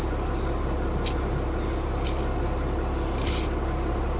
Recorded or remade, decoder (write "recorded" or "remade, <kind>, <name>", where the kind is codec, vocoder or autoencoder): recorded